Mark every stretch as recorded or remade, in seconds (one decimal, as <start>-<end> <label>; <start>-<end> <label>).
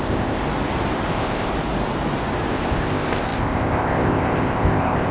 0.0-0.4 remade; 0.4-1.1 recorded; 1.1-1.5 remade; 1.5-2.5 recorded; 2.5-5.1 remade